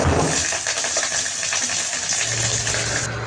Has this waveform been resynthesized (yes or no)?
no